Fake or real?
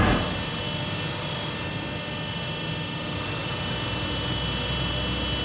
real